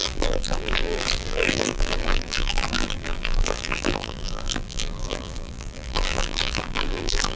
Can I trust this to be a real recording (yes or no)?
no